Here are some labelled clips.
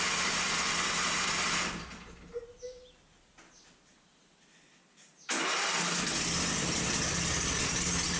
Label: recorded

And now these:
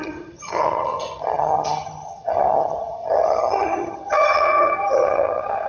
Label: remade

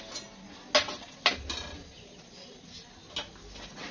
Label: recorded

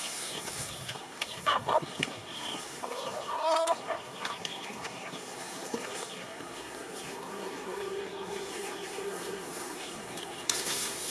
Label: remade